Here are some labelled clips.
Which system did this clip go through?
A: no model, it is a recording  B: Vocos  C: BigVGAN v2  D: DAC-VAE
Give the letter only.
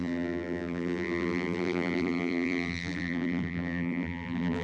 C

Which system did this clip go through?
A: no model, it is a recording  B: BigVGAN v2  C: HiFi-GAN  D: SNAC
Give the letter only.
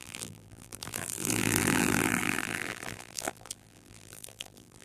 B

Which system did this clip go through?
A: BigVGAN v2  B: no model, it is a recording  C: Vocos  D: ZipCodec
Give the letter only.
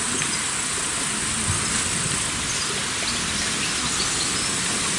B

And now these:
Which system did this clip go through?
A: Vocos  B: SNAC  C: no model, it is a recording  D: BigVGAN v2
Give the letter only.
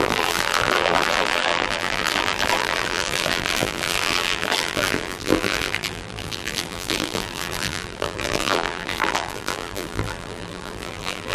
D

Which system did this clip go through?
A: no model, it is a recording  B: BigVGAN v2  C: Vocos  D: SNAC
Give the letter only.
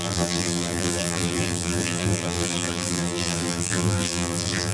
B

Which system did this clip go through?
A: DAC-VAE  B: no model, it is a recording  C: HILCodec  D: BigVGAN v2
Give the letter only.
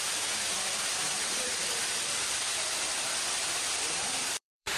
D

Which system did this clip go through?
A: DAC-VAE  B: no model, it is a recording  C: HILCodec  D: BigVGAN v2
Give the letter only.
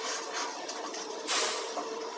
D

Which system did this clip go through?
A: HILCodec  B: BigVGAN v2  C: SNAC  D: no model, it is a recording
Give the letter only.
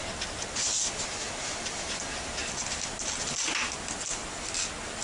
D